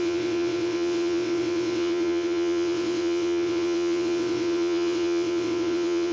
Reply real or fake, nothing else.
fake